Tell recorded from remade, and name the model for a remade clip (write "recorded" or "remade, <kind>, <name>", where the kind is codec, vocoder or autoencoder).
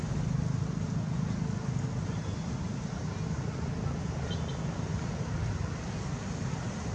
recorded